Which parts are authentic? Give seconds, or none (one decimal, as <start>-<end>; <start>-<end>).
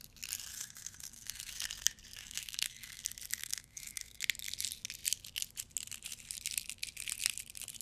0.0-0.5; 1.5-2.2; 3.0-3.4; 4.2-7.8